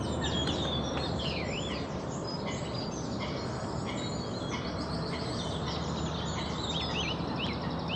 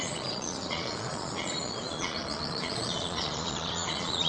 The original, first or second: first